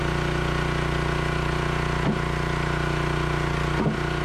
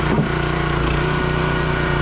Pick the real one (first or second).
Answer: first